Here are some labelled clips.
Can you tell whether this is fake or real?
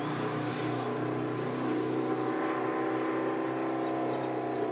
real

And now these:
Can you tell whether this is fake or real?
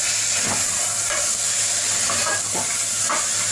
real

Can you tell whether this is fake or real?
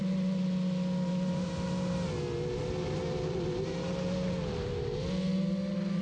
real